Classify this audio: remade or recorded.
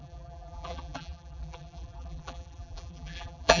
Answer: remade